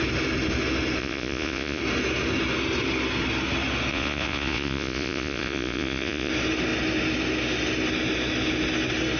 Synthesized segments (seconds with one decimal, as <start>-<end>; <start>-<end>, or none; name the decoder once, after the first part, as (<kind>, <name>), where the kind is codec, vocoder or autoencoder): 1.0-1.8 (vocoder, Vocos); 3.9-6.3